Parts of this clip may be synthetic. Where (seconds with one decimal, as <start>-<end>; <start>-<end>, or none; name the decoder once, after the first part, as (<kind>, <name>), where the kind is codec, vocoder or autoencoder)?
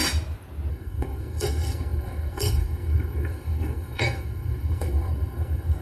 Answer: 0.7-5.8 (codec, SNAC)